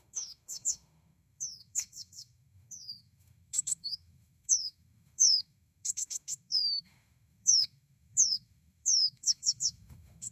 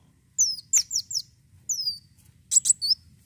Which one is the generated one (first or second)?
first